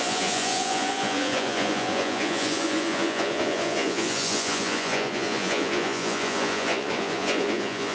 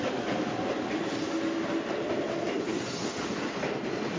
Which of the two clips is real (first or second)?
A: second